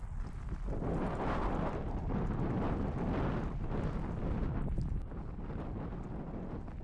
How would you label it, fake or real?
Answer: real